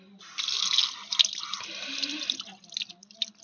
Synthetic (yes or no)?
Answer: no